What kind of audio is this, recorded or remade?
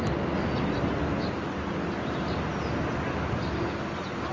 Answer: recorded